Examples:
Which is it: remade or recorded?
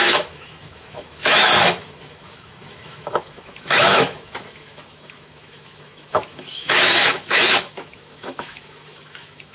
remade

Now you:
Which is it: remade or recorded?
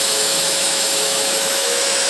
remade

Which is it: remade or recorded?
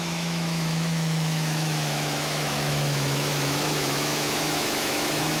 remade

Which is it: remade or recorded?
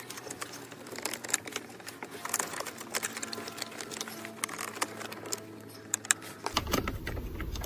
recorded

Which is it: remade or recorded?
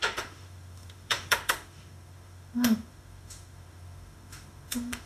remade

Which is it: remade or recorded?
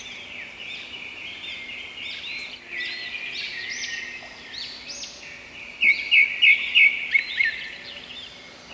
recorded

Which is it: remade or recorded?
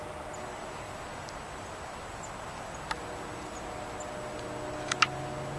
recorded